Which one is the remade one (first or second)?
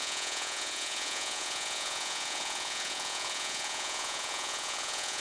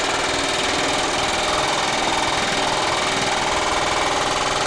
first